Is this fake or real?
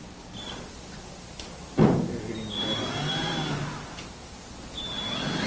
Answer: real